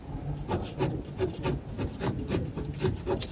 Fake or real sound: real